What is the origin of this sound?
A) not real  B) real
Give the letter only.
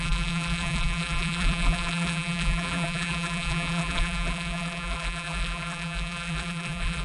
A